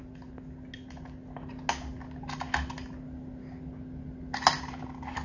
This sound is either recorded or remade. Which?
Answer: recorded